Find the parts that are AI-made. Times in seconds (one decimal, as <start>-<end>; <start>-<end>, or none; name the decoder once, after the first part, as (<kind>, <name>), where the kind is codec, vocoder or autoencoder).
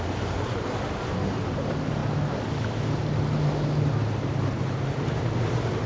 0.0-2.0 (vocoder, BigVGAN v2); 5.5-5.9